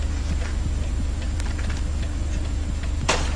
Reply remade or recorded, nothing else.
recorded